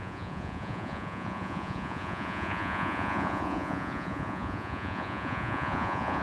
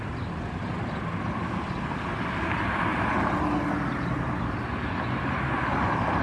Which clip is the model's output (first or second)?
first